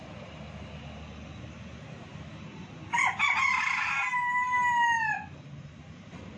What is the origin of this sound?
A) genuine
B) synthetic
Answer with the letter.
A